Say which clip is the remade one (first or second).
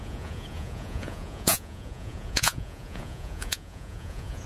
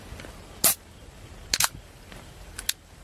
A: first